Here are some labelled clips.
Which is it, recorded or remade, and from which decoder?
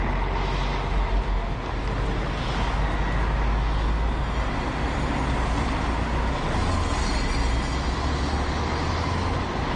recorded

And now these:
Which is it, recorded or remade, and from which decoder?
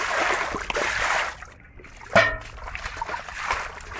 recorded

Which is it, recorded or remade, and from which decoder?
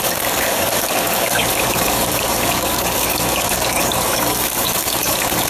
remade, codec, DAC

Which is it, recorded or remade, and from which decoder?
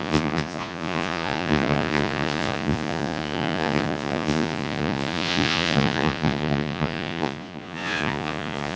remade, vocoder, Vocos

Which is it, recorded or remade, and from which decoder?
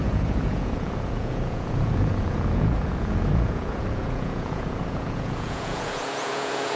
remade, vocoder, Vocos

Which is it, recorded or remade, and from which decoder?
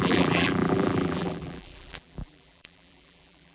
remade, vocoder, BigVGAN v2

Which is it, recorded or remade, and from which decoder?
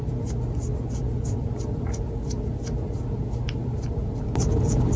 recorded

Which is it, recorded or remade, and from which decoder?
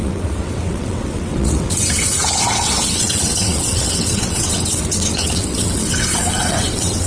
remade, vocoder, WaveNeXt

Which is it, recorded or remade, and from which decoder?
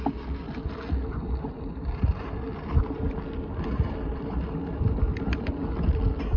recorded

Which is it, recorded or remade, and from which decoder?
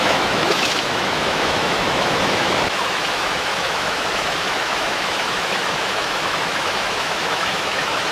remade, autoencoder, DAC-VAE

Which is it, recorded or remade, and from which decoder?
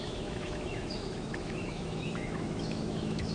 remade, autoencoder, DAC-VAE